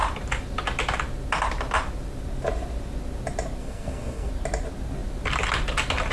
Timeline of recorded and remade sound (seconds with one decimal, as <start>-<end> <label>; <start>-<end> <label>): 0.0-3.6 recorded; 3.6-4.3 remade; 4.3-6.1 recorded